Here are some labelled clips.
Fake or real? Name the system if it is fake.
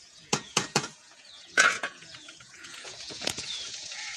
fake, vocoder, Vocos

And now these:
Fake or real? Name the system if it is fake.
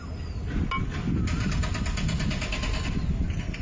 real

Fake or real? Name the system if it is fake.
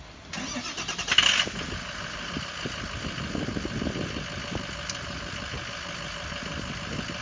real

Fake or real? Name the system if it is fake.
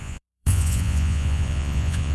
fake, vocoder, Vocos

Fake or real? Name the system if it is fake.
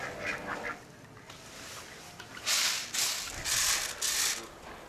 real